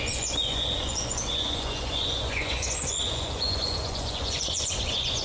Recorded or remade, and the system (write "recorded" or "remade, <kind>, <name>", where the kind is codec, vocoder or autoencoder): remade, vocoder, Vocos